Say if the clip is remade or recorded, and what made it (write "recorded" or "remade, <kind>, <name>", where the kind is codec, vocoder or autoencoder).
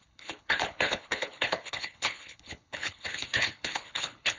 remade, codec, HILCodec